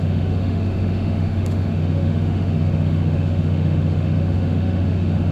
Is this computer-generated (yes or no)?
yes